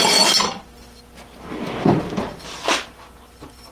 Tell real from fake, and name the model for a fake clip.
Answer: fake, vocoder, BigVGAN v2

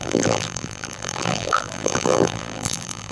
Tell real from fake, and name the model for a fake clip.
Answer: fake, vocoder, BigVGAN v2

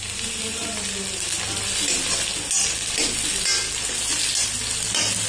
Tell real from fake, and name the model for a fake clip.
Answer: real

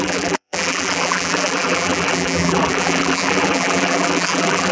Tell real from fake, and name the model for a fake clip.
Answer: fake, vocoder, BigVGAN v2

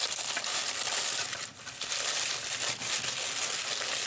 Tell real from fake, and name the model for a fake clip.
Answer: fake, vocoder, BigVGAN v2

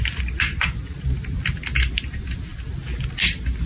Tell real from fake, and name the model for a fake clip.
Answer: real